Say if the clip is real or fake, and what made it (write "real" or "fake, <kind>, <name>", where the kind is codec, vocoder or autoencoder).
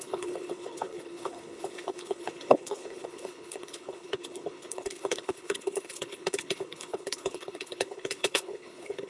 fake, codec, HILCodec